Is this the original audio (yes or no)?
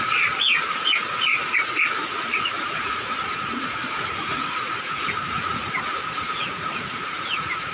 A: no